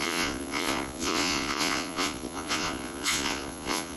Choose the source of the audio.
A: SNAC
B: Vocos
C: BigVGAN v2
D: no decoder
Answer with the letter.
B